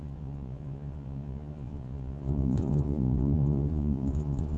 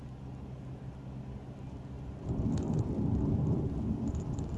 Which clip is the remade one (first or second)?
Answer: first